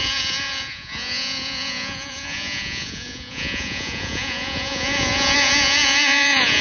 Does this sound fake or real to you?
fake